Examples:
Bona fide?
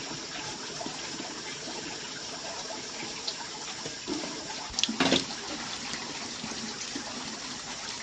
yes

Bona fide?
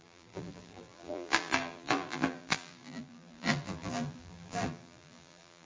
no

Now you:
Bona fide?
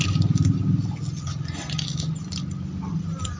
yes